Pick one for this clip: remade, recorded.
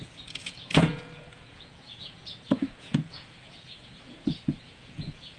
remade